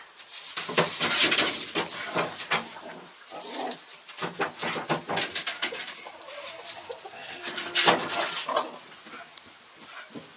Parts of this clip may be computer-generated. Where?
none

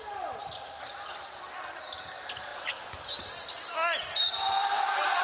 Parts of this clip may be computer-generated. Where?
0.4-1.1 (vocoder, BigVGAN v2); 4.2-5.2

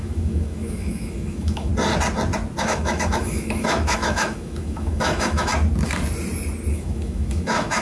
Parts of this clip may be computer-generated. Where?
0.0-1.7 (autoencoder, DAC-VAE); 2.6-5.5; 6.7-7.8

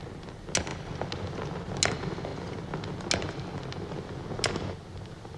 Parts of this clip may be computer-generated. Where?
none

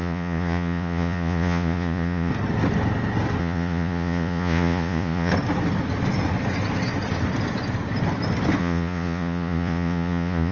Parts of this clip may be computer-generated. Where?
0.0-2.3 (vocoder, Vocos); 3.4-5.3; 8.6-10.5

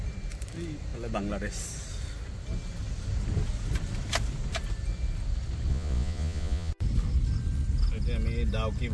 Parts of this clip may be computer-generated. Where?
5.7-6.7 (vocoder, Vocos)